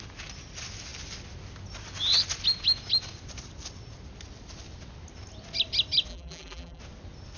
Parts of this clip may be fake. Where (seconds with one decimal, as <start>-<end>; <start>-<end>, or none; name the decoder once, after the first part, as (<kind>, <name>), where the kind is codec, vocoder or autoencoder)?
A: 6.1-6.8 (vocoder, BigVGAN v2)